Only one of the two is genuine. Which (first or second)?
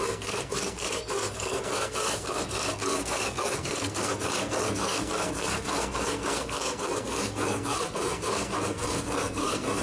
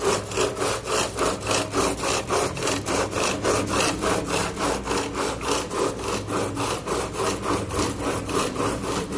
second